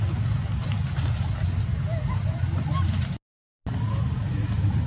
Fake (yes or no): no